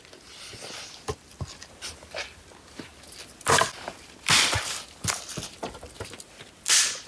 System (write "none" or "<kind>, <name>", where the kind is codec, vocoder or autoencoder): none